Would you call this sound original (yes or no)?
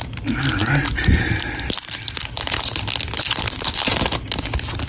yes